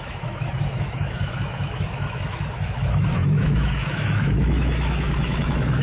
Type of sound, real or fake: fake